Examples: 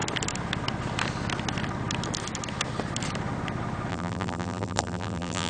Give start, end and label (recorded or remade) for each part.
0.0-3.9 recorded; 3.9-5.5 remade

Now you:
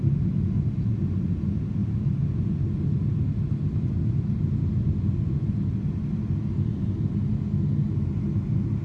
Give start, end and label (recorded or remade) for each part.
0.0-8.8 recorded

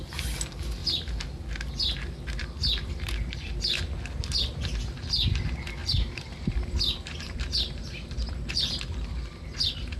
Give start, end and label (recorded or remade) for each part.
0.0-0.8 recorded; 0.8-1.4 remade; 1.4-5.8 recorded; 5.8-8.8 remade; 8.8-10.0 recorded

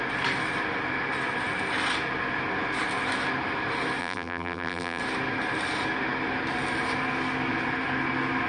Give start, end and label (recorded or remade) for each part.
0.0-4.0 recorded; 4.0-5.0 remade; 5.0-8.5 recorded

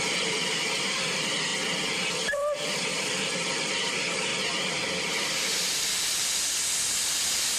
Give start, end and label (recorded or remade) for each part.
0.0-1.5 remade; 1.5-2.1 recorded; 2.1-4.3 remade; 4.3-5.1 recorded; 5.1-7.6 remade

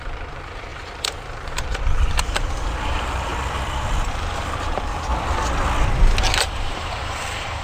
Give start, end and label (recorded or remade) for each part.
0.0-3.3 remade; 3.3-4.1 recorded; 4.1-5.1 remade; 5.1-6.4 recorded; 6.4-7.6 remade

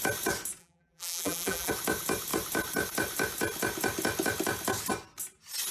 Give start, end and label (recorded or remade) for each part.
0.0-0.6 recorded; 0.6-1.7 remade; 1.7-5.7 recorded